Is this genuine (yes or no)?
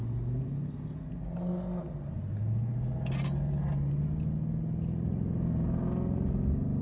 yes